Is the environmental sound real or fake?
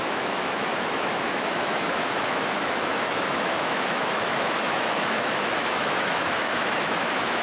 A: fake